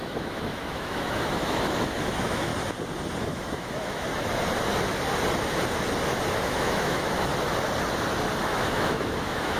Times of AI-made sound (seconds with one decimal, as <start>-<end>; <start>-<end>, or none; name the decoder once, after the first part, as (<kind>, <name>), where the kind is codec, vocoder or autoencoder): 0.0-2.5 (autoencoder, DAC-VAE); 3.2-4.1; 6.3-7.3; 8.4-9.6